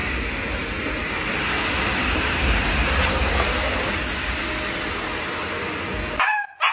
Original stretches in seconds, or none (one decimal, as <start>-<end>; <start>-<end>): 0.0-6.7